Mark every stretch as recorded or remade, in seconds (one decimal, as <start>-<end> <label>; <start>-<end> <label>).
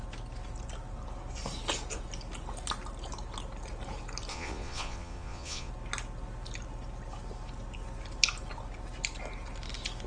0.0-4.3 recorded; 4.3-5.7 remade; 5.7-10.1 recorded